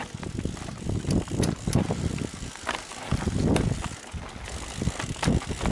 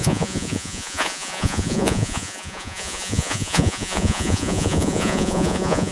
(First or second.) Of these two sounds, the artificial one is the second